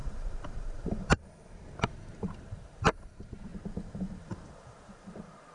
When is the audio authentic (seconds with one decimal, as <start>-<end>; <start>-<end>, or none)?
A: 3.5-4.2

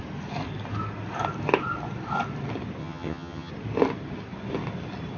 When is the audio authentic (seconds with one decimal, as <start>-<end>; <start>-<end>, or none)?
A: 0.0-2.8; 3.5-5.2